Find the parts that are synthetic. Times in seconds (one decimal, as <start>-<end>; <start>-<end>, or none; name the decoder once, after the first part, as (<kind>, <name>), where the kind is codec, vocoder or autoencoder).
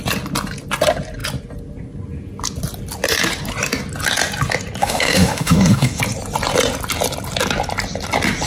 4.8-6.0 (autoencoder, DAC-VAE)